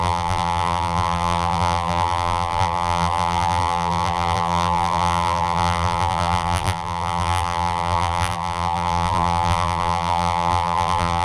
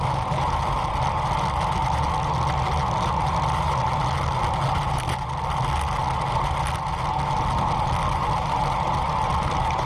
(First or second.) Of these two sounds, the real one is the second